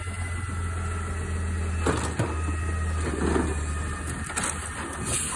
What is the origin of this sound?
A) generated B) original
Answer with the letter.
B